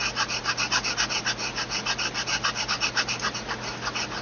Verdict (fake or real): real